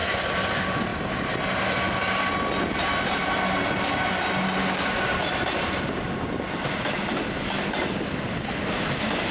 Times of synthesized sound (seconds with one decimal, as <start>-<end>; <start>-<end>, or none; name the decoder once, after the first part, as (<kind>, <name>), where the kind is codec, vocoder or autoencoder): 4.6-5.1 (codec, DAC)

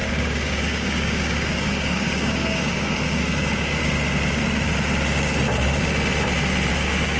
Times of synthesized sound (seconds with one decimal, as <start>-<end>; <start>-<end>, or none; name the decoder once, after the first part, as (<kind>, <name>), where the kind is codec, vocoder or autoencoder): 0.0-3.8 (codec, DAC); 6.7-7.2